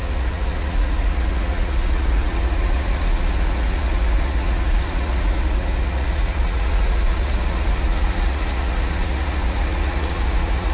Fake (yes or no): yes